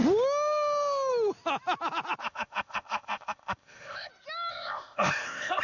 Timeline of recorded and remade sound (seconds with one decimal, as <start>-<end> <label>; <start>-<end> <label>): 0.0-2.2 recorded; 2.2-4.1 remade; 4.1-4.5 recorded; 4.5-5.6 remade